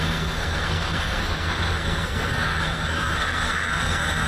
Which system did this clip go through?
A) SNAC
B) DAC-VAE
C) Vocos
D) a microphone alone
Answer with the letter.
A